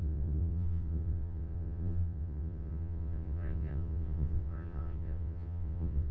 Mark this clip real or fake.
fake